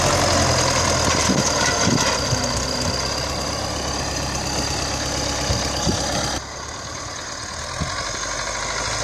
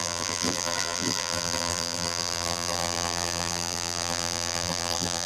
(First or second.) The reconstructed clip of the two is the second